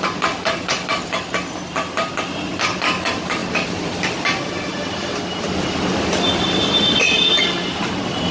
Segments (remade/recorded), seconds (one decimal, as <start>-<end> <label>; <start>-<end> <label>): 0.0-8.3 recorded